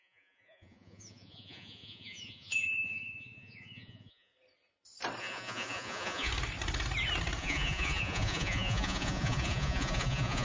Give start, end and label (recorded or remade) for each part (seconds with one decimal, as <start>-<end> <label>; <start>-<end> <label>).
0.0-4.3 remade; 4.3-5.2 recorded; 5.2-6.3 remade; 6.3-7.4 recorded; 7.4-10.4 remade